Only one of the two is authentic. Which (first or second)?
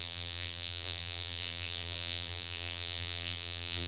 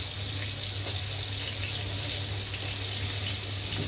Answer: second